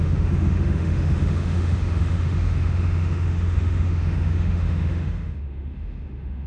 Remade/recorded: remade